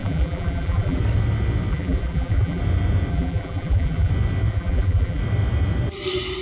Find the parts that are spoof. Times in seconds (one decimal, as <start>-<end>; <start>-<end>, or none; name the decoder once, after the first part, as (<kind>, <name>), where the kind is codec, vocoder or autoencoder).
0.0-1.0 (vocoder, BigVGAN v2); 1.7-2.6; 3.1-4.1; 4.5-5.2